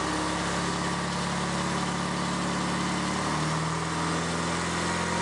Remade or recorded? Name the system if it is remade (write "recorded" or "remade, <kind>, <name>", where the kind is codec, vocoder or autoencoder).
recorded